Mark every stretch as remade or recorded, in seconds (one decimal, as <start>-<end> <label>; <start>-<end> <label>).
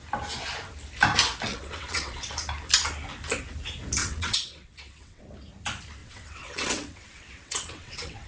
0.0-1.5 recorded; 1.5-2.3 remade; 2.3-4.0 recorded; 4.0-5.2 remade; 5.2-6.0 recorded; 6.0-8.3 remade